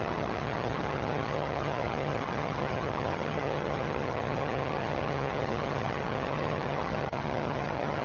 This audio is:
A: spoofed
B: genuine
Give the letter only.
A